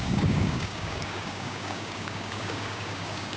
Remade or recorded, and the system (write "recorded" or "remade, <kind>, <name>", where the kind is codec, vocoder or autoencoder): remade, codec, DAC